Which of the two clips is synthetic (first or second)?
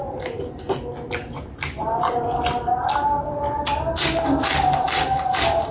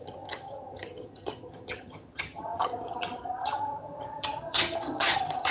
second